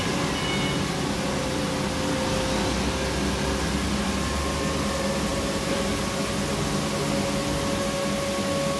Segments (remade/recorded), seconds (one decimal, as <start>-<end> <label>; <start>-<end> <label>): 0.0-5.3 recorded; 5.3-6.2 remade; 6.2-8.8 recorded